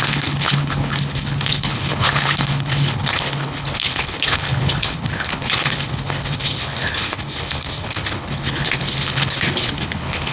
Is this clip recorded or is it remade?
remade